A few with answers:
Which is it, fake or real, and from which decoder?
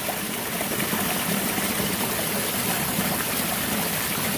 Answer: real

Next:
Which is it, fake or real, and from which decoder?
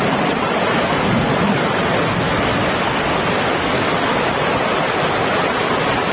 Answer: real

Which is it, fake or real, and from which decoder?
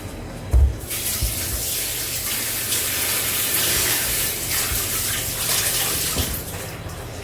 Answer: real